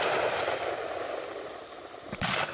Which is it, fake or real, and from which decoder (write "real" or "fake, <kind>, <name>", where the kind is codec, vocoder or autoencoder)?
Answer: real